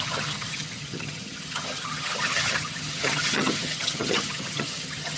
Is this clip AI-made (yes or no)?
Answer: yes